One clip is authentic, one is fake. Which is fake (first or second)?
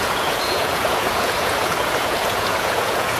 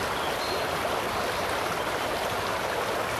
first